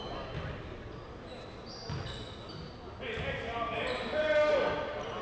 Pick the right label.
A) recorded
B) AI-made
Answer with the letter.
A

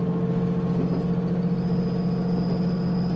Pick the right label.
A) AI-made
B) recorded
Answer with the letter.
B